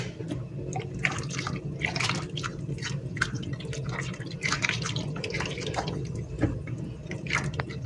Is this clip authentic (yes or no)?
yes